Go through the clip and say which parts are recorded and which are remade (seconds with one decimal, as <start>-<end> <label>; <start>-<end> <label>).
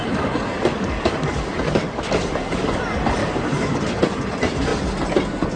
0.0-0.7 recorded; 0.7-2.8 remade; 2.8-3.2 recorded; 3.2-3.8 remade; 3.8-5.6 recorded